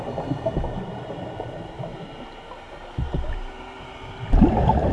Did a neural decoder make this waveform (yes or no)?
yes